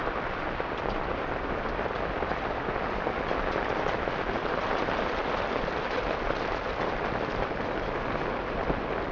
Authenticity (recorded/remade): recorded